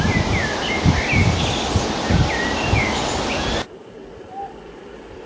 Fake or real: real